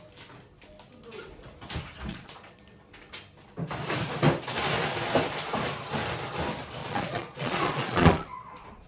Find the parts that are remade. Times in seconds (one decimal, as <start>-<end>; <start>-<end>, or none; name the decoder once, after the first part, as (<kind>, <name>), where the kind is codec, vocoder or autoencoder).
2.1-2.6 (vocoder, Vocos); 6.8-8.9